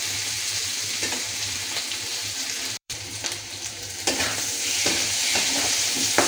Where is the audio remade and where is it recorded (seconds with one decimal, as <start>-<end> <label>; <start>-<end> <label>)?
0.0-6.3 remade